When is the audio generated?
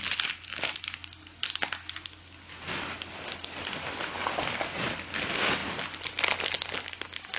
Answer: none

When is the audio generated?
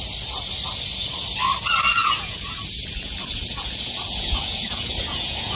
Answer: 2.0-5.6 (vocoder, Vocos)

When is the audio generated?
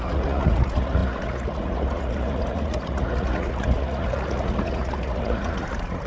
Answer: 0.0-6.1 (vocoder, Vocos)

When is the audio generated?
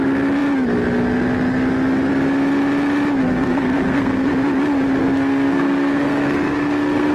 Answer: 3.2-4.3 (codec, SNAC); 5.0-7.1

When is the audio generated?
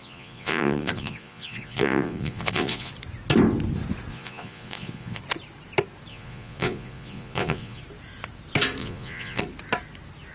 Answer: 0.0-2.9 (vocoder, Vocos); 4.1-5.2; 6.1-7.8; 8.8-9.4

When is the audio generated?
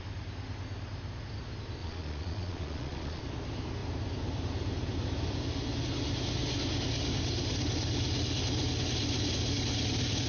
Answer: 1.8-3.2 (vocoder, Vocos)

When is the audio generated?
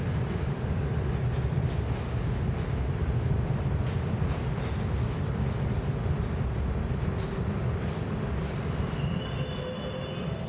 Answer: none